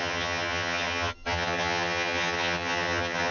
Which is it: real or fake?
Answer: fake